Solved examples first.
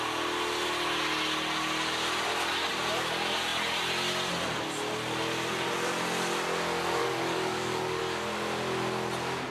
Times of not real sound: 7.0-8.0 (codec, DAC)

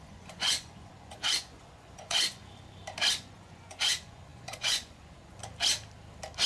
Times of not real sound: 0.0-2.4 (vocoder, Vocos); 3.1-5.4

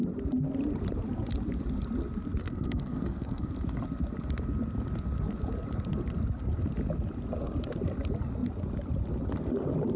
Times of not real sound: 2.4-3.5 (codec, SNAC)

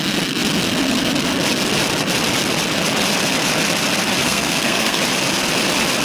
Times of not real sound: 4.2-5.0 (codec, SNAC)

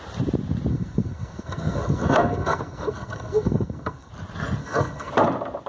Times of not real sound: 0.7-4.1 (codec, SNAC); 4.6-5.1